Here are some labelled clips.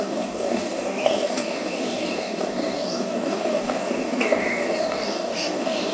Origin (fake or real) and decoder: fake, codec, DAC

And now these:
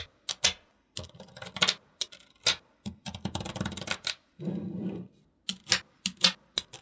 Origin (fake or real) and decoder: real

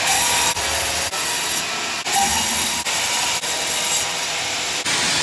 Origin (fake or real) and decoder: real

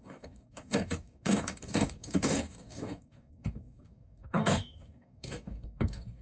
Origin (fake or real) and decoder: fake, codec, DAC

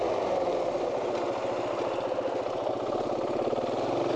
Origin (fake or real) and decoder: real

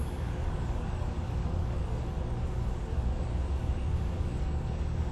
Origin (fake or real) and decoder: fake, codec, DAC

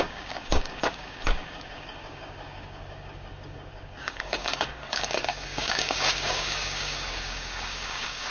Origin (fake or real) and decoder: fake, codec, DAC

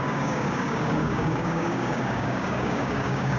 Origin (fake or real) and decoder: fake, codec, DAC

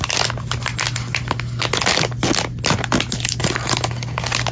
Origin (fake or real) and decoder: real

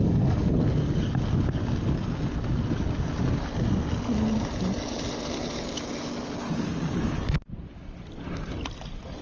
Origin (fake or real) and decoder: real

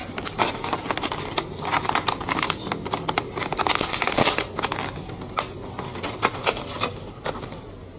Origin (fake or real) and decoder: real